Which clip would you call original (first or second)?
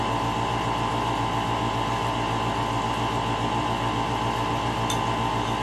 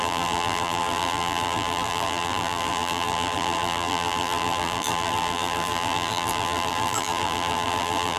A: first